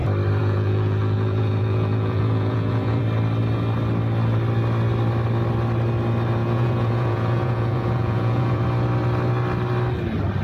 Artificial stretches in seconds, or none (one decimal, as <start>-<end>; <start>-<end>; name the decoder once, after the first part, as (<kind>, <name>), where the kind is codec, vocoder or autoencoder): 0.4-3.0 (vocoder, Vocos); 6.4-8.6